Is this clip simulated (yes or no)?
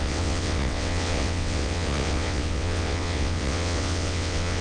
yes